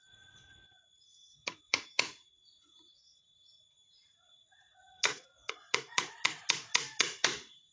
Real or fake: fake